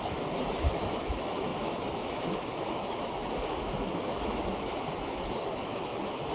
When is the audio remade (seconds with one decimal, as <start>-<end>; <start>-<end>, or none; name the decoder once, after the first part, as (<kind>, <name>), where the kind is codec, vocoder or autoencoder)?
0.0-6.3 (autoencoder, DAC-VAE)